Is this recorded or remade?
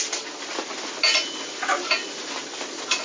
recorded